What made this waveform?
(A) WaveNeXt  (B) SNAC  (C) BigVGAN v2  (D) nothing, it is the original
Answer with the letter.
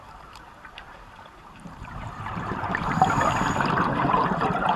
C